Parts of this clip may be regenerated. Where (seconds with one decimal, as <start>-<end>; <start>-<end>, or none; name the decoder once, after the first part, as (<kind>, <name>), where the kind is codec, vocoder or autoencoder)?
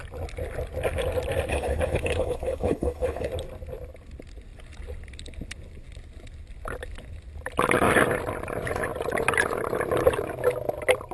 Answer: 1.5-3.3 (codec, HILCodec)